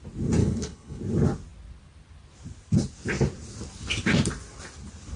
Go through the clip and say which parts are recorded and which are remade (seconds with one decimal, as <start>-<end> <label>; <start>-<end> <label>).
0.0-0.4 recorded; 0.4-1.0 remade; 1.0-5.2 recorded